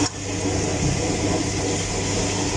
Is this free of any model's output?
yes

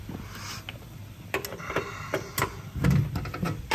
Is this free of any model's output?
yes